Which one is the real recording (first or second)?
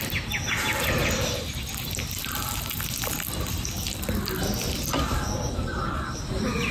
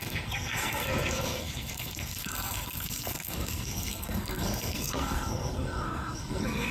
first